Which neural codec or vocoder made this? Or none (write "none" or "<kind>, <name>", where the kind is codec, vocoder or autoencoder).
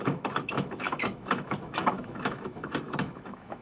autoencoder, DAC-VAE